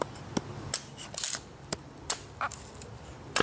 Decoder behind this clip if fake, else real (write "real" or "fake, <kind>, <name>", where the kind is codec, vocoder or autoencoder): real